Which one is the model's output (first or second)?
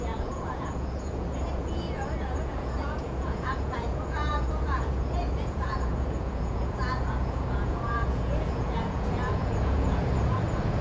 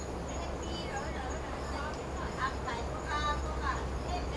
first